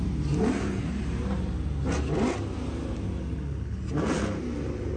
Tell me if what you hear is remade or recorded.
recorded